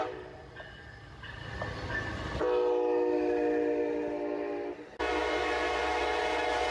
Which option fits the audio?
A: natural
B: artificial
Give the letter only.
A